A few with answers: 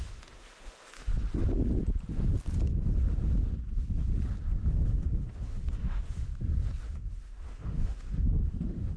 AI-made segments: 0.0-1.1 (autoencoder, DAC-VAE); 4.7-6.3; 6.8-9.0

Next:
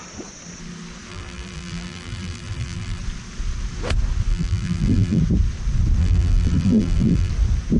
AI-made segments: 1.1-3.0 (vocoder, BigVGAN v2); 4.3-5.2; 6.0-7.3

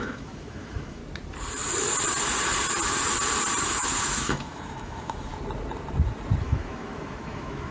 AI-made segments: 0.0-1.0 (autoencoder, DAC-VAE); 3.6-5.3; 6.4-7.7

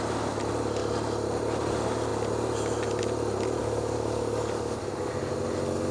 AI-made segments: 3.6-5.1 (codec, DAC)

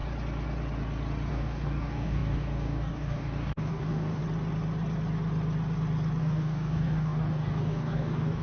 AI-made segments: 1.3-4.2 (codec, DAC); 6.2-8.4

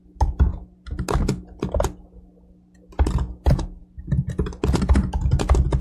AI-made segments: none

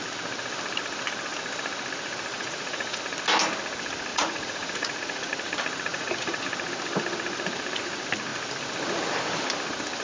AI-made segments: 2.3-3.0 (vocoder, Vocos); 4.1-5.3; 5.9-6.4

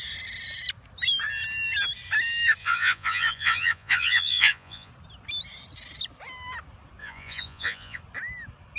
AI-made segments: 2.6-4.9 (vocoder, Vocos); 7.0-8.0